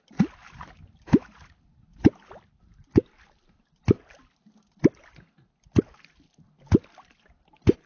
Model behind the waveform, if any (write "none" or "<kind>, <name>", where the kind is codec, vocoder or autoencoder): none